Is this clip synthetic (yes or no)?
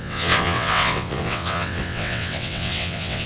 yes